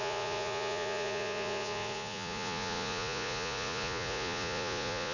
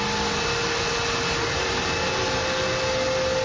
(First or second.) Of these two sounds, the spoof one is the first